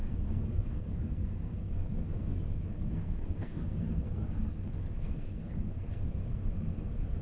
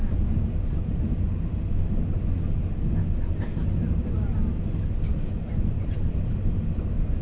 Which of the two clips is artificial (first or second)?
first